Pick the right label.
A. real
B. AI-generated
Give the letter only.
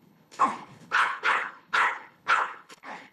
B